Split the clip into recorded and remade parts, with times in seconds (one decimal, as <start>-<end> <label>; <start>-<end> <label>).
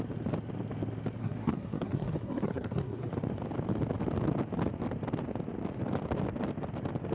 0.0-1.2 recorded; 1.2-3.1 remade; 3.1-7.1 recorded